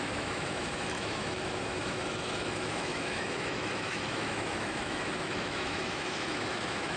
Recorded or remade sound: remade